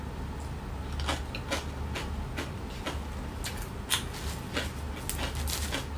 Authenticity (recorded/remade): recorded